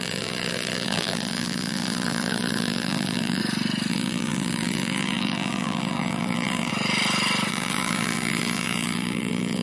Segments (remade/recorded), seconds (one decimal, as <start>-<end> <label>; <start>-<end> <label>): 0.0-3.4 remade; 3.4-3.9 recorded; 3.9-6.7 remade; 6.7-7.5 recorded; 7.5-9.6 remade